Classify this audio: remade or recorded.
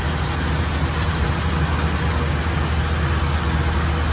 recorded